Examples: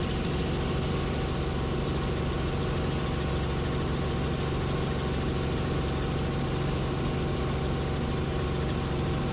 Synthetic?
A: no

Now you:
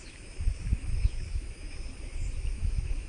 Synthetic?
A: yes